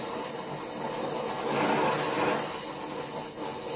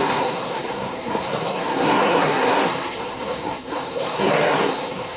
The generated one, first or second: second